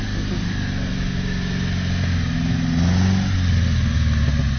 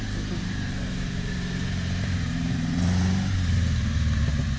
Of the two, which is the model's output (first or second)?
second